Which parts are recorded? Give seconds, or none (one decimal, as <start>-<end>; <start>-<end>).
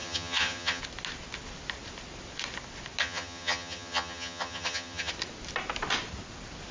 0.8-3.0; 5.1-6.7